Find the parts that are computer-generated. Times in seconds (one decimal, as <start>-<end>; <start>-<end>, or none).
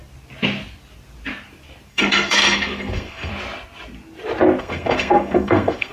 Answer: 1.9-3.3; 4.6-5.9